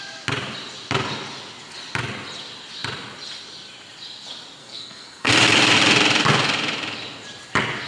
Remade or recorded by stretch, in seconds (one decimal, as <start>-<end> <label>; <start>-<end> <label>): 0.0-4.6 recorded; 4.6-5.3 remade; 5.3-7.9 recorded